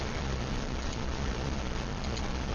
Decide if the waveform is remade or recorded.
remade